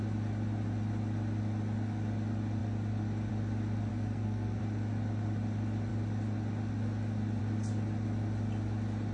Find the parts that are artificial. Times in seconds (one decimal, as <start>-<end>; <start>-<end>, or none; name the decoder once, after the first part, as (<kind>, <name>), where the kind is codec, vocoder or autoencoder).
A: 3.9-4.6 (codec, SNAC)